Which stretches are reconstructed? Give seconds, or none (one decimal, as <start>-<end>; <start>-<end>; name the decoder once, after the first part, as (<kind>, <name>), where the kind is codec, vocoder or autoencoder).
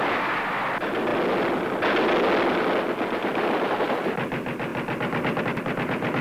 none